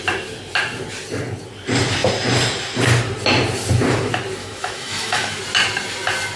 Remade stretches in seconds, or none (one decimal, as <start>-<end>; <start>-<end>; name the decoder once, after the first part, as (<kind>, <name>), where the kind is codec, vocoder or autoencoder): 4.4-5.4 (autoencoder, DAC-VAE)